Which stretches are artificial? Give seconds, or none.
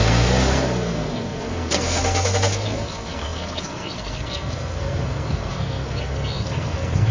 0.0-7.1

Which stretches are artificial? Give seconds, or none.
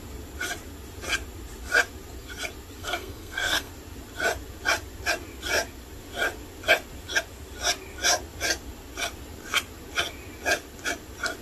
2.8-3.7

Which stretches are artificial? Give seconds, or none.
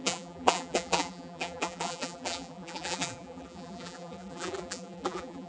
0.0-5.5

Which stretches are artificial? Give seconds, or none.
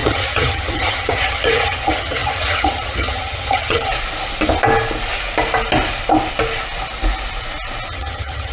0.0-3.9; 7.9-8.5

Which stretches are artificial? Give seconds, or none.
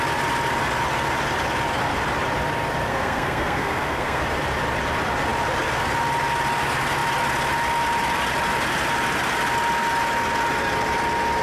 2.9-4.2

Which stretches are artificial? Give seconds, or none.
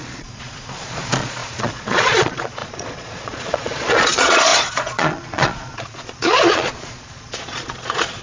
0.0-8.2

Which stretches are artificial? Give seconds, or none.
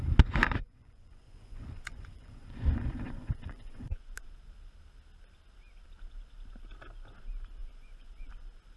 0.4-4.1; 7.6-8.3